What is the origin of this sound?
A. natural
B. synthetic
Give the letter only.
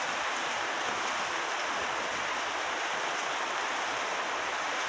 A